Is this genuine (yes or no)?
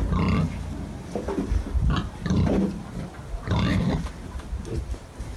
yes